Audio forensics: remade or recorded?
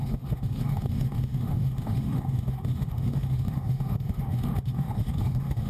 remade